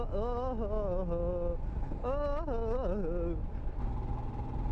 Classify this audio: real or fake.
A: real